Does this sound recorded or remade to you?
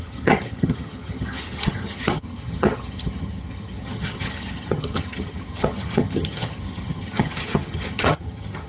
remade